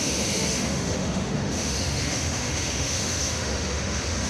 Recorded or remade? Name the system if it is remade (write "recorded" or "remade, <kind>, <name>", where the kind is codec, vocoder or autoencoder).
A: remade, autoencoder, DAC-VAE